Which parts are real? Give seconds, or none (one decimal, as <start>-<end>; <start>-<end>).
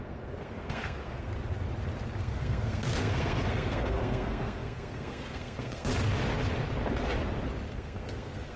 1.3-2.2; 5.9-7.7